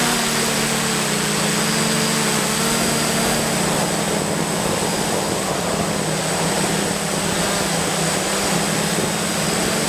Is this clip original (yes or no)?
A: yes